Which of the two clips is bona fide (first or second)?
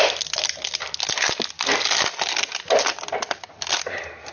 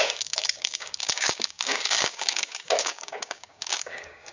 first